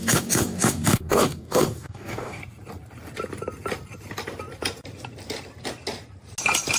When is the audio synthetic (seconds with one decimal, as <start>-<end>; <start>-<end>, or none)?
0.0-2.4

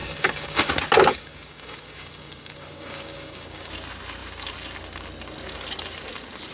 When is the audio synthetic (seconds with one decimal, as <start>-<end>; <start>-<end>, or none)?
0.0-0.7; 1.1-3.7